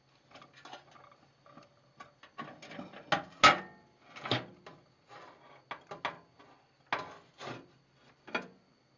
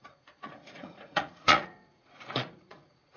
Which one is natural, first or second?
first